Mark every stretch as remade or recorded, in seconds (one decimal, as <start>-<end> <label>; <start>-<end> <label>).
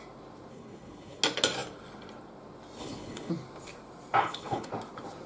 0.0-0.5 recorded; 0.5-1.2 remade; 1.2-2.8 recorded; 2.8-3.3 remade; 3.3-4.2 recorded; 4.2-4.7 remade; 4.7-5.3 recorded